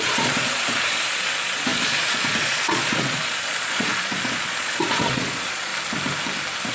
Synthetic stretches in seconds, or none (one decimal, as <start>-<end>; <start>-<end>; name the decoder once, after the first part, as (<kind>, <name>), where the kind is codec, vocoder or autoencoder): 0.0-5.7 (vocoder, Vocos)